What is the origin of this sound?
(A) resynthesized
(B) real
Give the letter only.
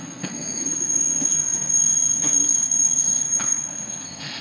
A